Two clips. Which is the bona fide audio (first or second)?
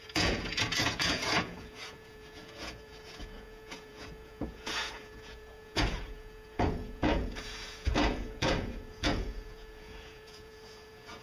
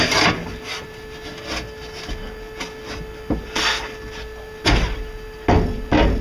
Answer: second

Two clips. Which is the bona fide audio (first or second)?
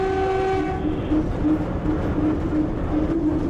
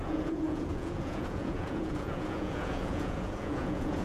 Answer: first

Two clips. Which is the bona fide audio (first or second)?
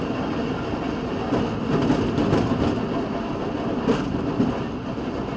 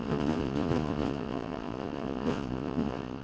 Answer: first